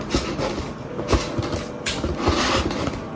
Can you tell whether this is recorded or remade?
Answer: recorded